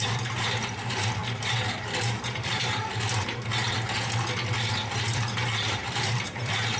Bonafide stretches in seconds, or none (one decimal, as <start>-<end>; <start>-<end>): 3.6-4.9

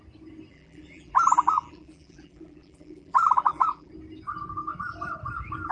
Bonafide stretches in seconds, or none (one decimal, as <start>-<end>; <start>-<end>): 0.0-0.5; 3.9-5.7

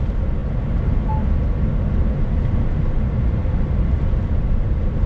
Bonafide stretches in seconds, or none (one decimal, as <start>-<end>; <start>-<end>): 0.0-5.1